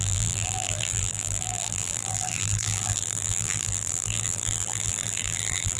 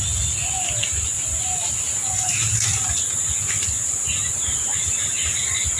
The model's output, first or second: first